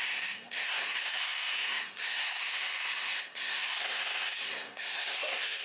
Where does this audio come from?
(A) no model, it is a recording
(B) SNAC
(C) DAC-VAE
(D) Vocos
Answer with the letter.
B